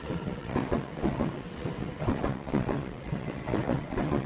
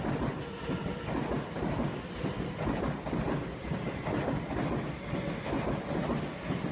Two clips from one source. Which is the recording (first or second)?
second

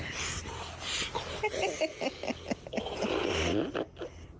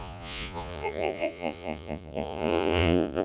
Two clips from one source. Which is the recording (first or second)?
first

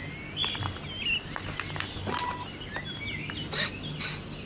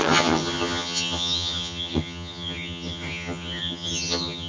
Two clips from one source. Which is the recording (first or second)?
first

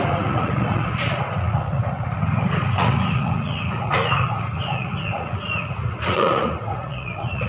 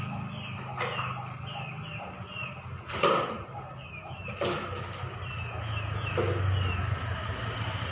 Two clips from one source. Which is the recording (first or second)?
second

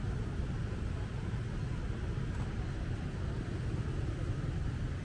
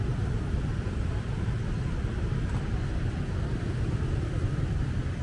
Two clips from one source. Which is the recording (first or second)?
first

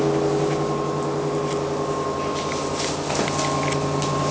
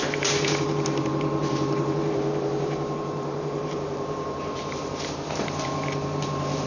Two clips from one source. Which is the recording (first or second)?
first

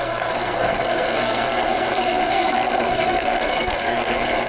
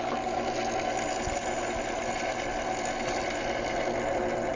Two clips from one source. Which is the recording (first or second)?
second